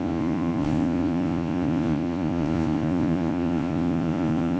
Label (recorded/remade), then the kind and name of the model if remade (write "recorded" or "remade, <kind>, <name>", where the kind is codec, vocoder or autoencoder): remade, vocoder, Vocos